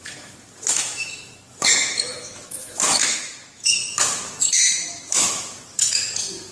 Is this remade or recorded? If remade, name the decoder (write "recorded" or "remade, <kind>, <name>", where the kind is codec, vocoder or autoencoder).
remade, autoencoder, DAC-VAE